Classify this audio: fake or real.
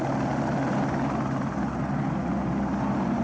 real